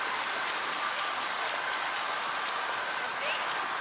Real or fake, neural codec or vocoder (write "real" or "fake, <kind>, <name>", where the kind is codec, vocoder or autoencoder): real